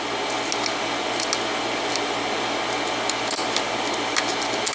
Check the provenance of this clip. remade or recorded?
recorded